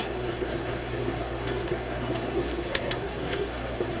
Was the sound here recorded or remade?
remade